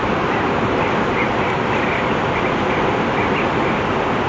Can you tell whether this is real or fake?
real